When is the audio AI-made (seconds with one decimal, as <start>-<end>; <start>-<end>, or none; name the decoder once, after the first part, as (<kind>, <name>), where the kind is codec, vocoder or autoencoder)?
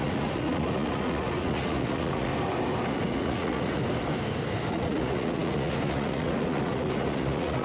0.0-2.3 (vocoder, Vocos); 2.9-3.8; 4.7-7.6